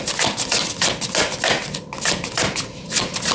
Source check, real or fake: real